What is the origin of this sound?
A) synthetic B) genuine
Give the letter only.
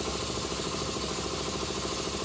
B